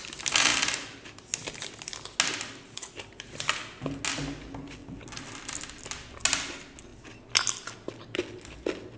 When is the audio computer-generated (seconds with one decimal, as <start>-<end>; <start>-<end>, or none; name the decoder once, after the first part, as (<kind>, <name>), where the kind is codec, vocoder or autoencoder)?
none